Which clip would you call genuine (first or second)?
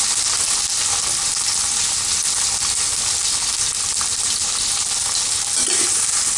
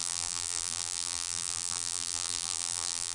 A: first